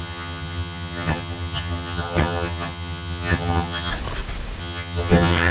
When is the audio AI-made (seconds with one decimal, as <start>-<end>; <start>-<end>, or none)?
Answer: 0.0-3.9; 4.6-5.5